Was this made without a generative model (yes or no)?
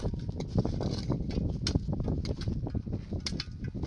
yes